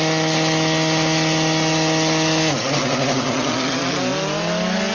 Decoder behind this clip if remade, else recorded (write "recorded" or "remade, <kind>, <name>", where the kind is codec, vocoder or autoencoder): recorded